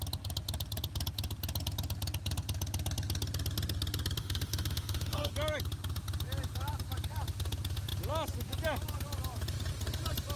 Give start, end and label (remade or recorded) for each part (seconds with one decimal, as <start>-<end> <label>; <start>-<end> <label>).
0.0-4.2 recorded; 4.2-5.3 remade; 5.3-10.4 recorded